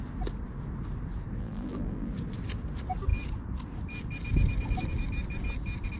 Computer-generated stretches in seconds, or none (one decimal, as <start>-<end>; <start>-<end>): 1.4-2.1